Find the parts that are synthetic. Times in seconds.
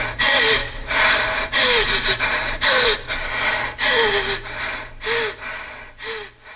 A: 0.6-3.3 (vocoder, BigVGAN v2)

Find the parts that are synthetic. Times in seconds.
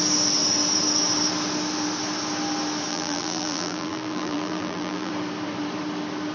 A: 2.9-5.1 (vocoder, BigVGAN v2)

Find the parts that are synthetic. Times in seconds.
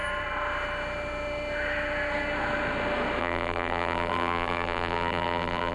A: 3.2-5.7 (vocoder, BigVGAN v2)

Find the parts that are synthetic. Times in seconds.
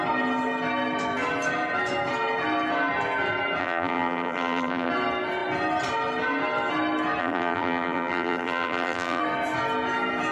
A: 3.6-4.9 (vocoder, BigVGAN v2); 7.2-9.2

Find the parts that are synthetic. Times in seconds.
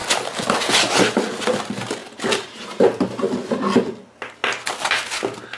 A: 2.0-2.6 (vocoder, BigVGAN v2)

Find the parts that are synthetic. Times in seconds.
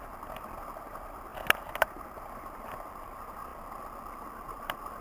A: 0.0-3.5 (vocoder, BigVGAN v2); 4.2-5.0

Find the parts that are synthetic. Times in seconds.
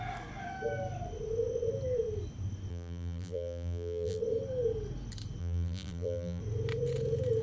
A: 2.7-4.2 (vocoder, BigVGAN v2); 5.4-6.4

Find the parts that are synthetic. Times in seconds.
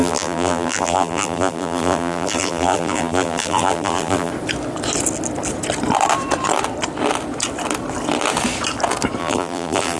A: 0.0-4.3 (vocoder, BigVGAN v2); 9.2-10.0